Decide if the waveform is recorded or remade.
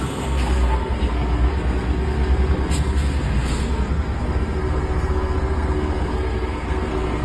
remade